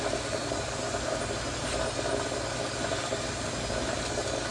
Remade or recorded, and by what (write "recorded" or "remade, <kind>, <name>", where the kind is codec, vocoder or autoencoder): recorded